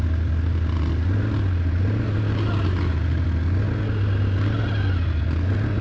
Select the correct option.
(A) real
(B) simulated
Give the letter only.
A